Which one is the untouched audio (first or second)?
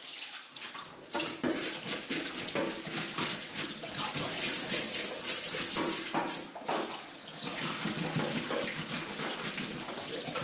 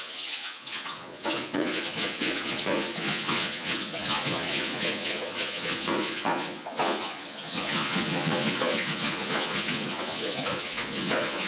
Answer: first